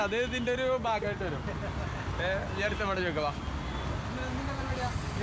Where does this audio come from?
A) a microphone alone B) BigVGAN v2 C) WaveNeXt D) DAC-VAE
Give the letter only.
A